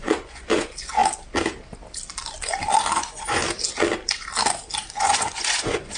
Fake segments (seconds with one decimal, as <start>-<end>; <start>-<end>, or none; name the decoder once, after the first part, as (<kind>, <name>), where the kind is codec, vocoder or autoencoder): 0.0-1.0 (vocoder, Vocos); 2.9-3.4; 5.0-6.0